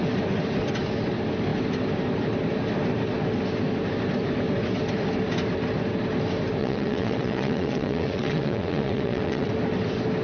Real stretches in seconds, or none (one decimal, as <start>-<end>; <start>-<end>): 0.0-6.6; 9.5-10.2

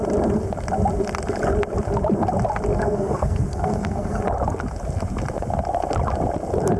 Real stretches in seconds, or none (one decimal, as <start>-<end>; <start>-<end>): 0.0-2.7; 4.2-6.8

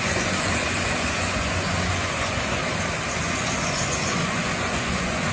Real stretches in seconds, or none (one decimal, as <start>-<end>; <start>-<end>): 2.6-3.1

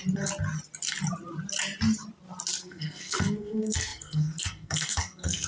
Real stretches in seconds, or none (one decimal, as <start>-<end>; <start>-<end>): 0.0-2.6

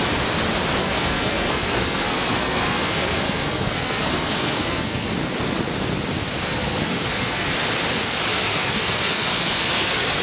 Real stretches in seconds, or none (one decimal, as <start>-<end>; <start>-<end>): 0.0-0.8; 5.1-6.4; 7.5-8.3

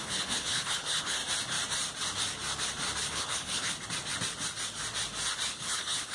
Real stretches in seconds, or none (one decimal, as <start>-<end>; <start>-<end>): 1.2-3.1; 3.7-5.5

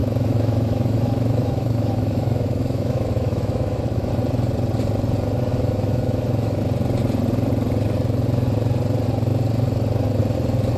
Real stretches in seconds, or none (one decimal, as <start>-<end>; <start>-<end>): 4.1-5.5; 6.6-10.8